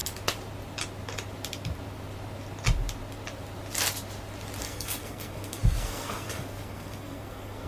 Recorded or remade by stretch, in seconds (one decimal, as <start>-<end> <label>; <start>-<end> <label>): 0.0-4.6 recorded; 4.6-7.7 remade